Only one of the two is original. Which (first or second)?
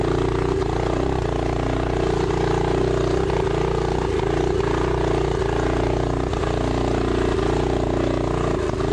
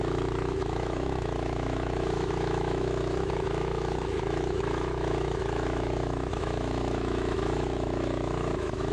first